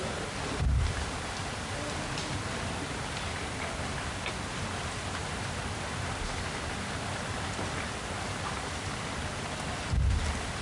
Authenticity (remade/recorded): recorded